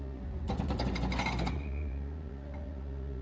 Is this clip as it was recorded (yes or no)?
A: no